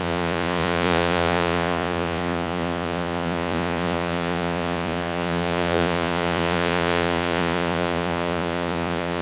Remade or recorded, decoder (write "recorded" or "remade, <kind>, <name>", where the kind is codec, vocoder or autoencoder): remade, vocoder, Vocos